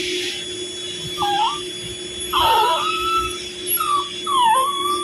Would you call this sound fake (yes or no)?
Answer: no